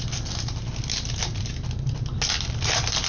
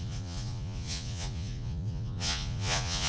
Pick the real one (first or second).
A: first